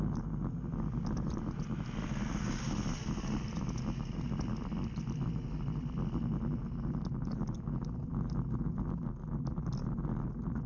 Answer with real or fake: real